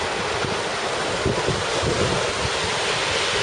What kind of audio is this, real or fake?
real